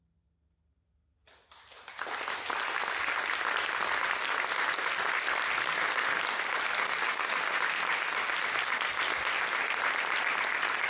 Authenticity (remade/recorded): recorded